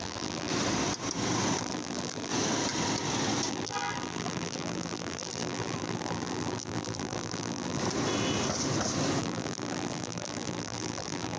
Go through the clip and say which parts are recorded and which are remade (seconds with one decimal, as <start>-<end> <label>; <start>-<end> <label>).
0.0-0.5 remade; 0.5-1.6 recorded; 1.6-2.3 remade; 2.3-3.5 recorded; 3.5-7.8 remade; 7.8-9.2 recorded; 9.2-11.4 remade